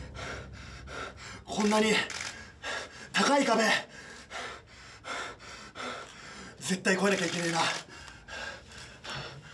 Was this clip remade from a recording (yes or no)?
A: no